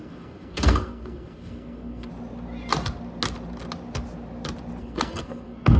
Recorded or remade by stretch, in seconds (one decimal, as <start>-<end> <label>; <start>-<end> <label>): 0.0-2.1 remade; 2.1-4.8 recorded; 4.8-5.8 remade